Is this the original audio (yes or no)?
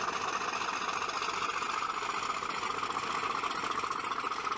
yes